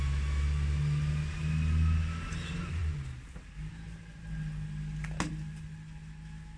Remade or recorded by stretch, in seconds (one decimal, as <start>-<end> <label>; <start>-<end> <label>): 0.0-6.6 recorded

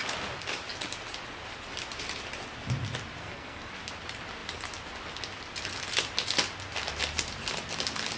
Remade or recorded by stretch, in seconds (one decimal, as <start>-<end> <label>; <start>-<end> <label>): 0.0-3.2 recorded; 3.2-3.7 remade; 3.7-8.2 recorded

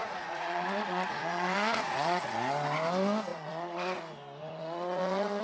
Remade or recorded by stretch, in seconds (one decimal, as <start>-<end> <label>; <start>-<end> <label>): 0.0-2.3 remade; 2.3-3.3 recorded; 3.3-4.0 remade; 4.0-4.4 recorded; 4.4-5.4 remade

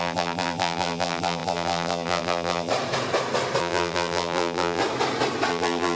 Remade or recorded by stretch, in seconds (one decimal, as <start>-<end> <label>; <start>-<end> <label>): 0.0-2.7 remade; 2.7-3.6 recorded; 3.6-4.8 remade; 4.8-5.5 recorded; 5.5-6.0 remade

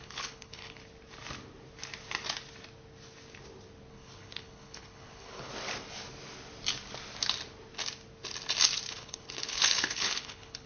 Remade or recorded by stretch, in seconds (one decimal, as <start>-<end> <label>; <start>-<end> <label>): 0.0-0.8 remade; 0.8-3.9 recorded; 3.9-5.5 remade; 5.5-8.9 recorded; 8.9-10.7 remade